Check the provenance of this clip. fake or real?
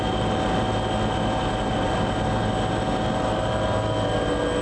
real